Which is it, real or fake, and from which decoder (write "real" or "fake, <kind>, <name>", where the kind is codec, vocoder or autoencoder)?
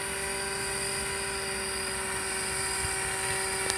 real